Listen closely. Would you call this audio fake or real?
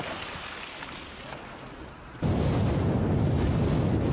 real